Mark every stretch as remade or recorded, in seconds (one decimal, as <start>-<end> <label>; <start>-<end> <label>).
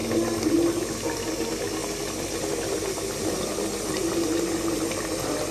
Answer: 0.0-1.8 recorded; 1.8-4.1 remade; 4.1-5.5 recorded